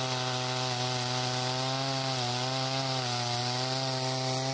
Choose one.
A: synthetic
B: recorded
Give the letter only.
B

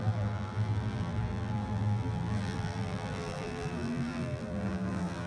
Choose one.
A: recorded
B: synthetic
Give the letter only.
B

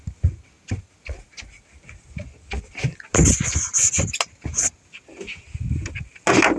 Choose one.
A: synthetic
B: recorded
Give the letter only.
B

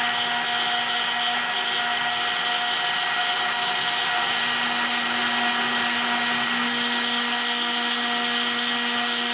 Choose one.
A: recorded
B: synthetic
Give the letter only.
A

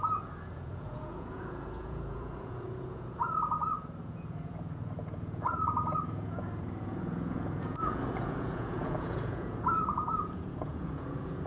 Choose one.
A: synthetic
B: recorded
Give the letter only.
A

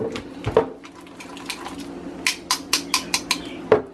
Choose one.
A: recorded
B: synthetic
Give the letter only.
A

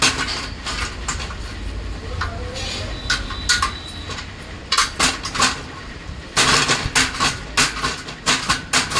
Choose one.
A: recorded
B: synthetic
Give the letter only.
A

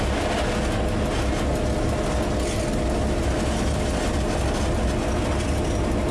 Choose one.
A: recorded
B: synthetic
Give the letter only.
A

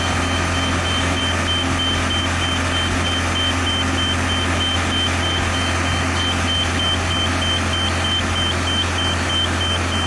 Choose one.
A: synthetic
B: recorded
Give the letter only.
B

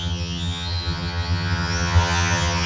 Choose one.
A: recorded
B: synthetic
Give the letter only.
B